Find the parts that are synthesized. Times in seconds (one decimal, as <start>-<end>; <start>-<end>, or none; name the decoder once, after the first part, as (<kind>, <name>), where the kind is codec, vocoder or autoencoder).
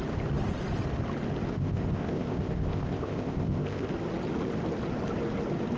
1.6-3.9 (codec, ZipCodec)